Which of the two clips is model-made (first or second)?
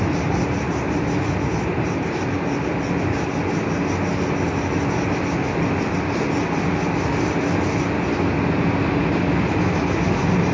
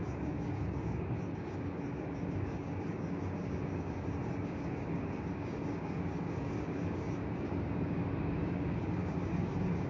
second